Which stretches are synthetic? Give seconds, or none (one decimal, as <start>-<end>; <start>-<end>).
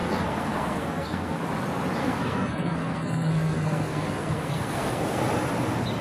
0.0-1.4; 2.0-5.2